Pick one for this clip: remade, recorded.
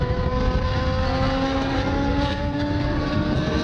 remade